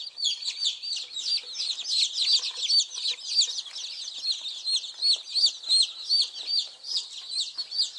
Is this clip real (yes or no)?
yes